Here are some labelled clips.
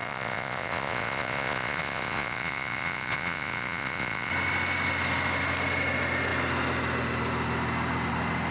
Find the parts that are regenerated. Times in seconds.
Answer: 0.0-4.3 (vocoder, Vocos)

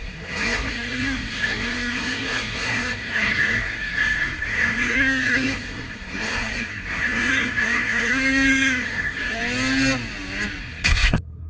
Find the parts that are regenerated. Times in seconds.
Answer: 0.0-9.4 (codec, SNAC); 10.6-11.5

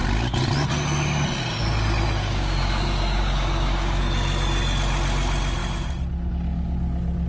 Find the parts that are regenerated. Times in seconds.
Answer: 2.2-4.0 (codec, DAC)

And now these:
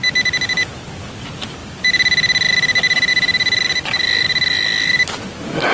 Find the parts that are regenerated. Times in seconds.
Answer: none

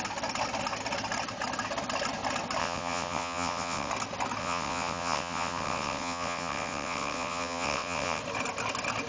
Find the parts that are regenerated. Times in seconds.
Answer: 2.6-3.9 (vocoder, WaveNeXt); 4.4-8.2

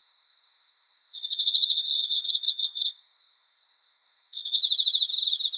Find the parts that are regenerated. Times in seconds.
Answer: 0.0-4.6 (codec, SNAC)